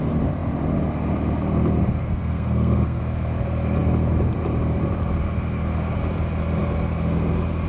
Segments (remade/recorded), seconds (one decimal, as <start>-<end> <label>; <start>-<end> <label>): 0.0-2.0 recorded; 2.0-3.0 remade; 3.0-7.7 recorded